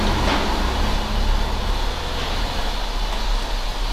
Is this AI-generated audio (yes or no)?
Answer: no